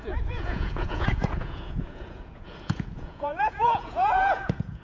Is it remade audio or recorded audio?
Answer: remade